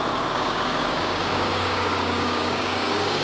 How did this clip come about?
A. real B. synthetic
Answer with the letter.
B